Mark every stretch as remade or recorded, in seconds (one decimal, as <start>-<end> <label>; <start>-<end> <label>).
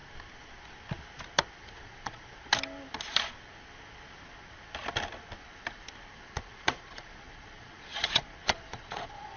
0.0-1.6 recorded; 1.6-2.5 remade; 2.5-6.1 recorded; 6.1-9.4 remade